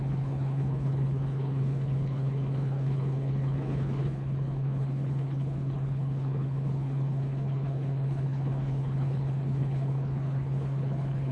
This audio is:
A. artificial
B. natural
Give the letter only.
A